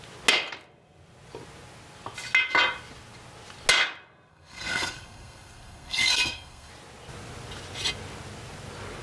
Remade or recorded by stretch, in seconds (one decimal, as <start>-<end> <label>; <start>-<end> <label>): 0.0-4.3 recorded; 4.3-6.7 remade; 6.7-9.0 recorded